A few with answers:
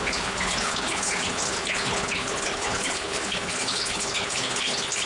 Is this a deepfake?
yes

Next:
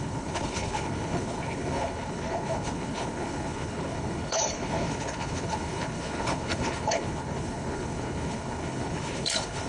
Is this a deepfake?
yes